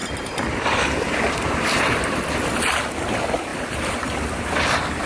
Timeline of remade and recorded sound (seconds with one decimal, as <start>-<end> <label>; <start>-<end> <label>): 0.0-1.8 remade; 1.8-5.1 recorded